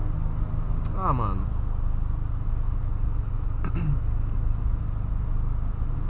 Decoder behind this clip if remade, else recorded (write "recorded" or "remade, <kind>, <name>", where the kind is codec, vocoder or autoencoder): recorded